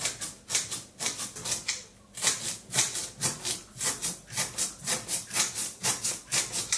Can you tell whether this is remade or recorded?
remade